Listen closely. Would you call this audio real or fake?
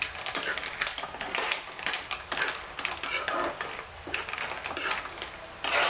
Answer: real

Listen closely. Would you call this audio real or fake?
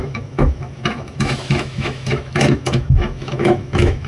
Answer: fake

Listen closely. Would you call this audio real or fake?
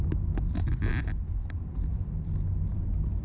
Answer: real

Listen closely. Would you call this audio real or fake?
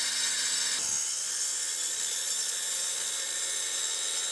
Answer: real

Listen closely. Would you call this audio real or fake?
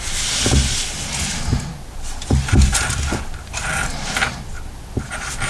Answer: real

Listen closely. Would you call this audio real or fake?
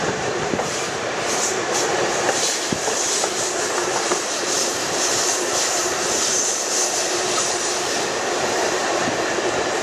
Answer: fake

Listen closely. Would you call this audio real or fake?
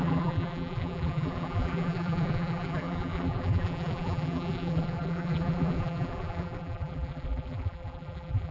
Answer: fake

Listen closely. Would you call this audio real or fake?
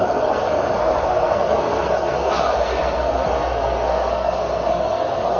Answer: fake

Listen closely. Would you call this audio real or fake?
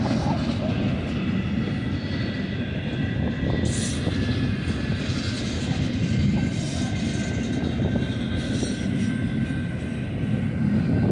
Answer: real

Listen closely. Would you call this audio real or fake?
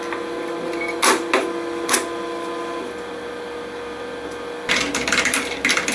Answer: real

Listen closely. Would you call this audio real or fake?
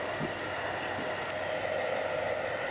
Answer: fake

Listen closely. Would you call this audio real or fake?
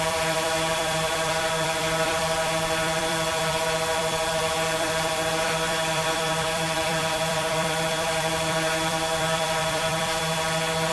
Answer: fake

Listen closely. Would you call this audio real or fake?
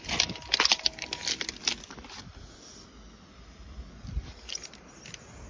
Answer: real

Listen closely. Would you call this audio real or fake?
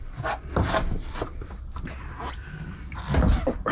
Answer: real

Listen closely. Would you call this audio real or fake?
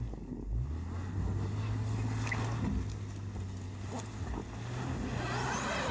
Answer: real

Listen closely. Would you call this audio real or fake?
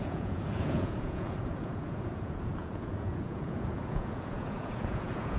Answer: fake